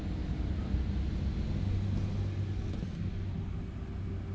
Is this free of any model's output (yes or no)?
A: yes